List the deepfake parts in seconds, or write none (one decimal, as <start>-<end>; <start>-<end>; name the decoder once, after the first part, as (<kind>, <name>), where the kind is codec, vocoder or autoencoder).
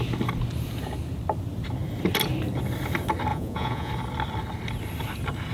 3.3-3.9 (vocoder, Vocos)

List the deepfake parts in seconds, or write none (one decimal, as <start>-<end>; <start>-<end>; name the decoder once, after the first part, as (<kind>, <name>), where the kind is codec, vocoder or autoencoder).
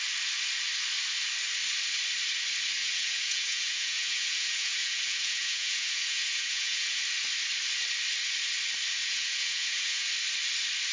2.8-7.0 (vocoder, Vocos); 9.0-10.1